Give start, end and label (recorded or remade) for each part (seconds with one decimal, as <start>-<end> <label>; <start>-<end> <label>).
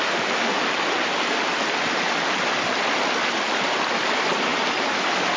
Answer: 0.0-5.4 recorded